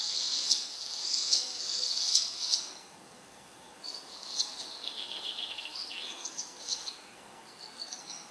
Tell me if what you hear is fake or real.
fake